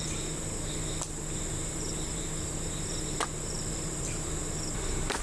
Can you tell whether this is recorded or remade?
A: remade